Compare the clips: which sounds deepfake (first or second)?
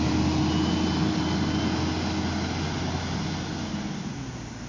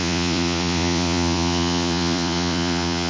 second